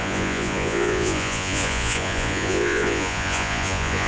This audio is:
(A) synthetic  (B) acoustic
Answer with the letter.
A